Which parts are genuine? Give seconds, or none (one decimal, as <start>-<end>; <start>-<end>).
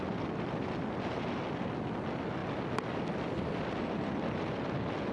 0.0-5.1